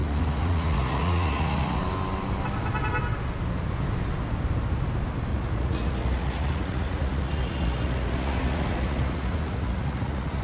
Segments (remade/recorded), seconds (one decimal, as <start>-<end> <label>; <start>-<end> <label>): 0.0-1.8 remade; 1.8-5.3 recorded; 5.3-10.4 remade

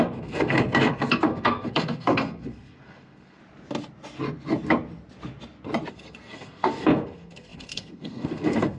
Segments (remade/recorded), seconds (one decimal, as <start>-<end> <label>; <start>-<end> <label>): 0.0-3.4 remade; 3.4-5.9 recorded; 5.9-8.8 remade

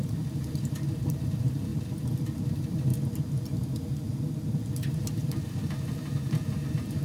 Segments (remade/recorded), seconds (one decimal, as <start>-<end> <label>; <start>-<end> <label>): 0.0-1.7 remade; 1.7-2.5 recorded; 2.5-2.9 remade; 2.9-4.8 recorded; 4.8-7.0 remade

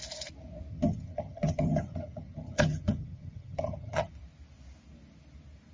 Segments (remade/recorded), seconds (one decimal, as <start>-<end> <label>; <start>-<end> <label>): 0.0-0.7 recorded; 0.7-4.1 remade; 4.1-5.7 recorded

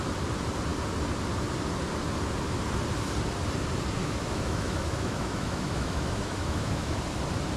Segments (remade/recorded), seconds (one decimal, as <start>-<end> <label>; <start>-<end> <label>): 0.0-4.0 recorded; 4.0-7.0 remade; 7.0-7.6 recorded

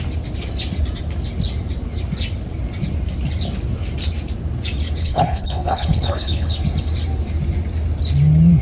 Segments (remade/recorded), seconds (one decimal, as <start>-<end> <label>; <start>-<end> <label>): 0.0-5.0 recorded; 5.0-6.5 remade; 6.5-8.6 recorded

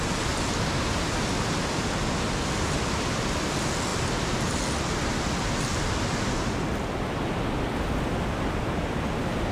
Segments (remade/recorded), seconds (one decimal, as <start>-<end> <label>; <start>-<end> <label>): 0.0-9.5 recorded